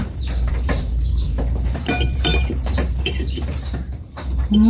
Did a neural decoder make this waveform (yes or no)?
yes